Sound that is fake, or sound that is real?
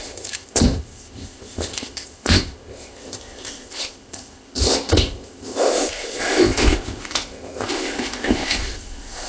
fake